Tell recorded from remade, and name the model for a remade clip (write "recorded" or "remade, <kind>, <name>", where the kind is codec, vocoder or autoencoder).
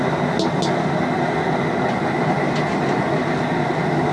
recorded